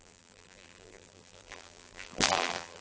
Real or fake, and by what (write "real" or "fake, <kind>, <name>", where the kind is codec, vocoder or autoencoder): fake, vocoder, BigVGAN v2